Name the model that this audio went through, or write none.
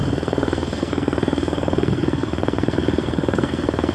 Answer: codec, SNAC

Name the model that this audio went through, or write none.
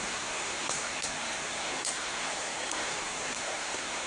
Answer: codec, SNAC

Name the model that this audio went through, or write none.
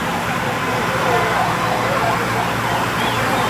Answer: none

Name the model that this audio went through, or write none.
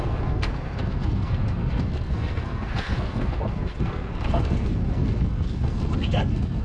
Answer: codec, SNAC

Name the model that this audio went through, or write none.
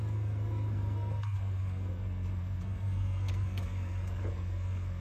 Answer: codec, SNAC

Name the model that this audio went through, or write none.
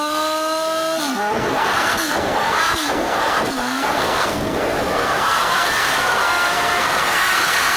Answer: codec, SNAC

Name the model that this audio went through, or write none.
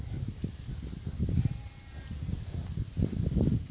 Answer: none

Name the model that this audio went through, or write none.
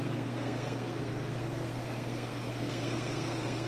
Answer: codec, SNAC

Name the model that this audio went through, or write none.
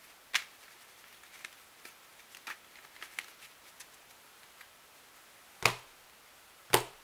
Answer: none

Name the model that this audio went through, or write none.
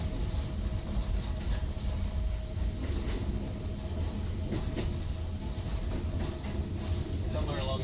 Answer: none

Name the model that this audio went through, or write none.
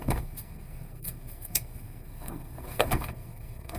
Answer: codec, SNAC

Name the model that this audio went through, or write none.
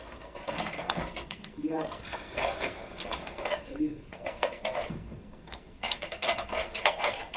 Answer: codec, SNAC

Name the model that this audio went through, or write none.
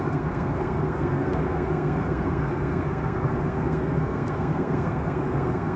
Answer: codec, SNAC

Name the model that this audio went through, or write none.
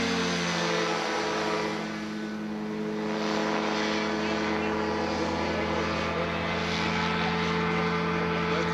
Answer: none